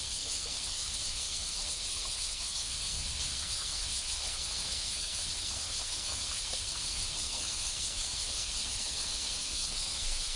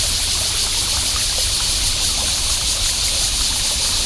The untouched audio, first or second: second